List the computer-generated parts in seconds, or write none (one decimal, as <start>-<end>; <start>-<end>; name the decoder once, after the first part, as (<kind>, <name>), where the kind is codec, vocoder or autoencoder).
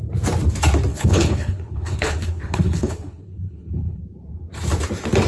0.9-4.0 (codec, HILCodec)